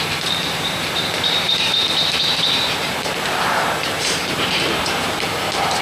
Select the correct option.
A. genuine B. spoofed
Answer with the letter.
B